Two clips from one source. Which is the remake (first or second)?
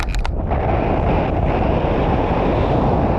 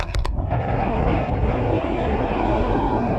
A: second